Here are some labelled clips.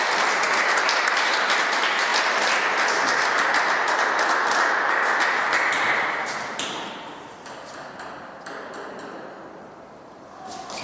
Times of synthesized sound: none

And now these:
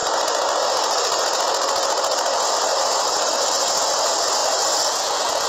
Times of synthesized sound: 4.4-5.0 (vocoder, BigVGAN v2)

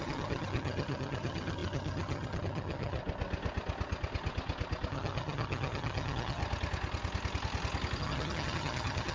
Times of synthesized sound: 0.0-3.0 (vocoder, HiFi-GAN); 4.9-6.4; 8.0-9.1

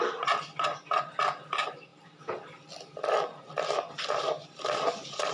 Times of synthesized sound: 1.9-5.3 (vocoder, BigVGAN v2)

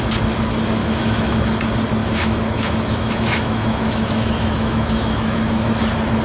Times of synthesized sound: 0.8-1.4 (autoencoder, DAC-VAE); 2.0-5.7

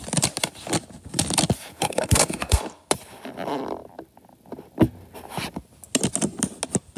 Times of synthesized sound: 1.7-2.6 (codec, SNAC)